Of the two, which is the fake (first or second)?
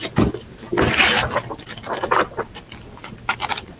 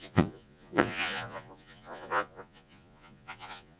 second